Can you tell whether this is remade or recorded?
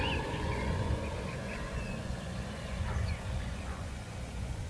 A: remade